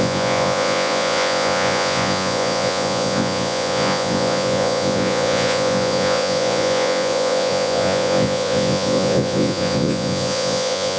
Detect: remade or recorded remade